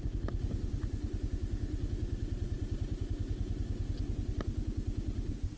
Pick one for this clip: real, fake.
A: real